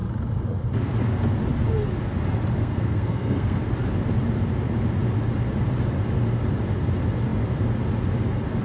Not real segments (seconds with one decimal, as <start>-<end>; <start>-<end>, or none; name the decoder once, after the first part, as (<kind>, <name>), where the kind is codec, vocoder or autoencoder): 2.6-3.6 (codec, SNAC)